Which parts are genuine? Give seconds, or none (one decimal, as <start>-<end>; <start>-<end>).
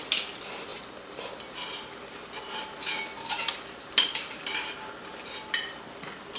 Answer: 0.0-6.4